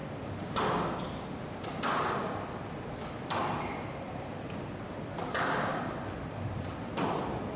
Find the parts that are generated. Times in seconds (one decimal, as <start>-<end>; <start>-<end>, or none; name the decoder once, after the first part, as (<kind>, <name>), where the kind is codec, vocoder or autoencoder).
none